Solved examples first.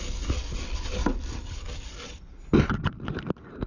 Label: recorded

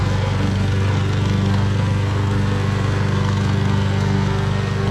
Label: remade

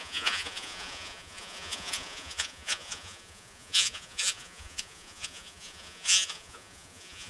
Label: remade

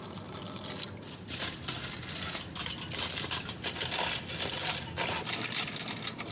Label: recorded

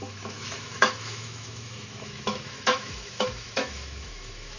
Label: remade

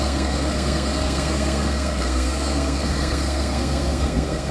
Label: remade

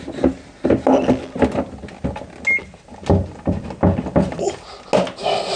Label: recorded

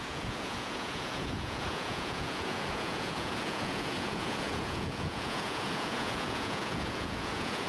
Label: remade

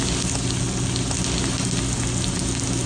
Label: recorded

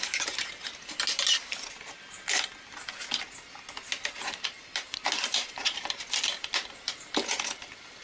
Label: recorded